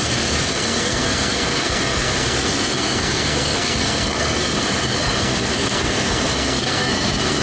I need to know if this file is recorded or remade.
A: remade